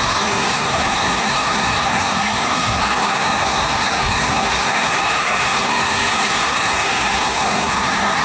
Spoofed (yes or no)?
yes